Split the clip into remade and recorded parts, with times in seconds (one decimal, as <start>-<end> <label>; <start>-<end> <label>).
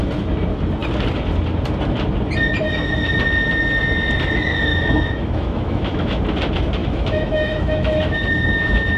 0.0-4.7 recorded; 4.7-6.2 remade; 6.2-6.8 recorded; 6.8-9.0 remade